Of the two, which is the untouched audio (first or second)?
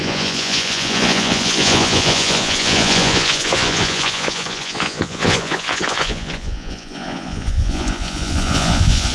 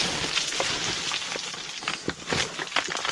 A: second